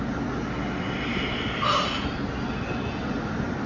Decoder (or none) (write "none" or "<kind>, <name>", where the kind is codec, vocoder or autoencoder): none